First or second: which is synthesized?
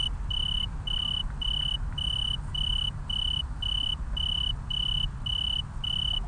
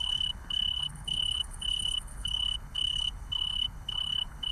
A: second